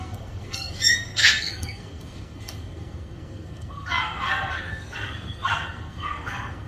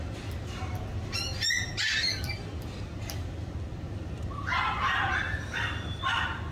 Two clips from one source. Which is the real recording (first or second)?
second